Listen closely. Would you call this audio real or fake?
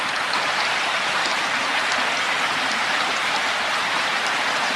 real